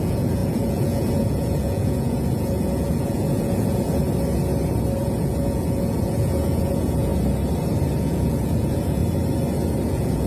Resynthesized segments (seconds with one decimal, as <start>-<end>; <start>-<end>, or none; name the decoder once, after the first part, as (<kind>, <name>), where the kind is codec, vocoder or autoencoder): 0.0-4.0 (vocoder, Vocos); 5.0-7.1; 8.0-9.0; 9.9-10.3